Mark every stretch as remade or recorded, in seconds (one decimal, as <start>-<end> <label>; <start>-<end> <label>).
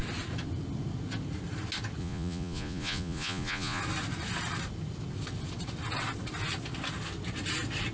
0.0-2.0 recorded; 2.0-3.8 remade; 3.8-7.9 recorded